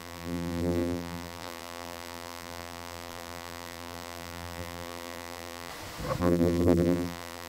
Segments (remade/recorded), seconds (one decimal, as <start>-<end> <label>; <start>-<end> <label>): 0.0-5.7 remade; 5.7-6.2 recorded; 6.2-7.5 remade

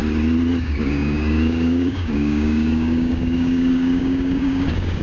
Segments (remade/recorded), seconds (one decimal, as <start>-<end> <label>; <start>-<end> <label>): 0.0-0.6 recorded; 0.6-5.0 remade